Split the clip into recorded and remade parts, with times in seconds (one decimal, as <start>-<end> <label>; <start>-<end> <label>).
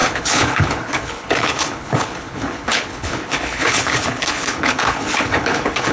0.0-5.9 remade